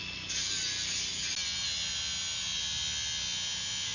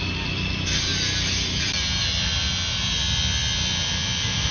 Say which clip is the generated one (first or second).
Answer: second